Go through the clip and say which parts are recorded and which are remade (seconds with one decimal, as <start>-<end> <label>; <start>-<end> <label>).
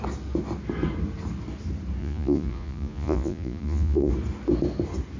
0.0-2.0 recorded; 2.0-4.1 remade; 4.1-5.2 recorded